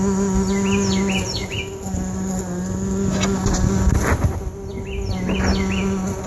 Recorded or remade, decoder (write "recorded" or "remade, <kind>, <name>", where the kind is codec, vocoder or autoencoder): recorded